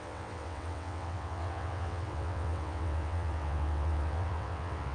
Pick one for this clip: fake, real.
fake